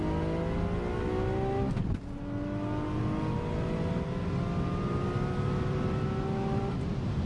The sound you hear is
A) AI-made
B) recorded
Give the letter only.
B